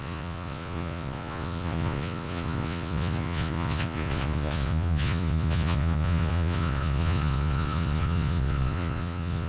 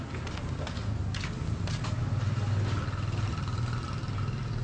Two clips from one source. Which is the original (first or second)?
second